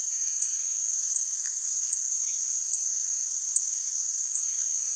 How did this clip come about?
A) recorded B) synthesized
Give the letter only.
B